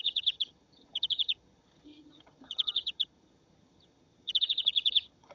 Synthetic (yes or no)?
yes